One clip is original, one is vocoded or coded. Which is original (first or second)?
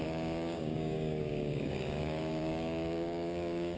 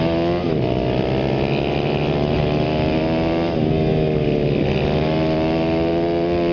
second